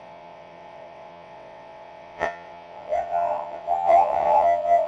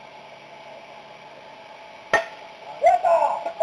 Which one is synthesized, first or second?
first